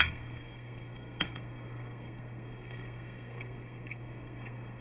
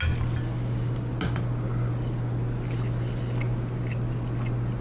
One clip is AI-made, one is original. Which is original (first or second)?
second